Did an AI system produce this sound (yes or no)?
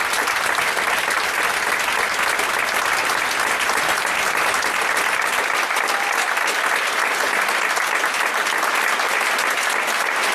no